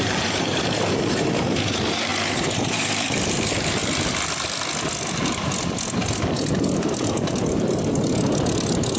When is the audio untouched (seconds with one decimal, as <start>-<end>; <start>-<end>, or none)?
3.8-6.6